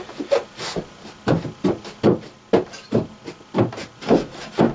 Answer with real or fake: real